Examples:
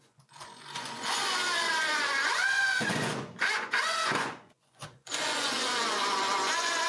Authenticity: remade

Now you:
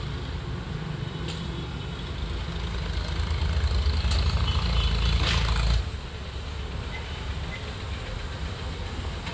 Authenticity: recorded